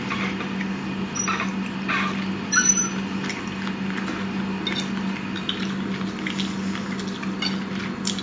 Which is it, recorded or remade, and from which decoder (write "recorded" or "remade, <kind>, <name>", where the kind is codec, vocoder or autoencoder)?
recorded